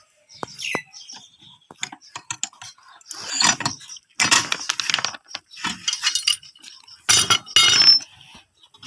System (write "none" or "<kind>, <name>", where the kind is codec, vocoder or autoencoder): none